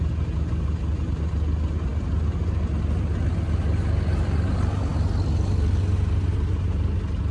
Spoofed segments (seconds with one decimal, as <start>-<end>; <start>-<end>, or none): none